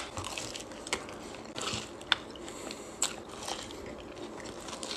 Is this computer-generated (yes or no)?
no